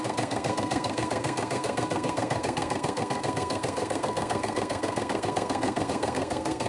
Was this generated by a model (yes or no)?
yes